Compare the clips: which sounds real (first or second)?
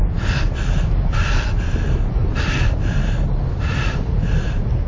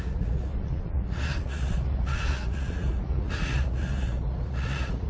first